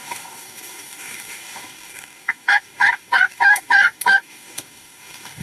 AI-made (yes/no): yes